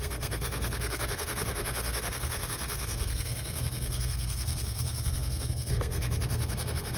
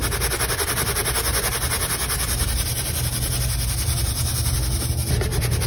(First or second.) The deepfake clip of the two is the first